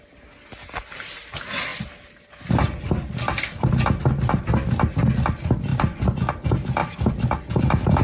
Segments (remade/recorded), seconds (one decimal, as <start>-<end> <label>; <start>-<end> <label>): 0.0-8.0 recorded